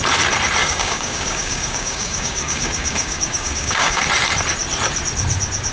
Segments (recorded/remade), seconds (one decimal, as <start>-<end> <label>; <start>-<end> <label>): 0.0-0.6 recorded; 0.6-4.0 remade; 4.0-5.7 recorded